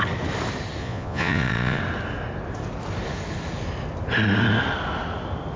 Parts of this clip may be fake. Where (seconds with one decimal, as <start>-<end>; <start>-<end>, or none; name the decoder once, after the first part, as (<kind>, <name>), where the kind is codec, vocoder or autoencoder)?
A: 0.8-1.8 (vocoder, Vocos)